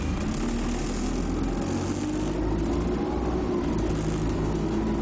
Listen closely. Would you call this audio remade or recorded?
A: recorded